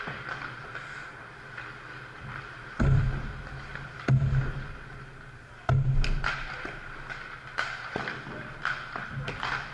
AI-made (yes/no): no